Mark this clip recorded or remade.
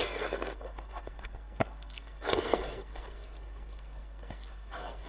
remade